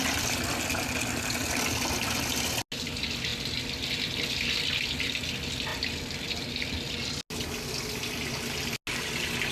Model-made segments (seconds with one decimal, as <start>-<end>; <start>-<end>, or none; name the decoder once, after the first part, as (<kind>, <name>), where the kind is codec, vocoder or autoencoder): none